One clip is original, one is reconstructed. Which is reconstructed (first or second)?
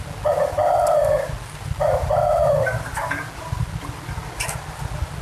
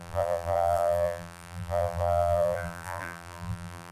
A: second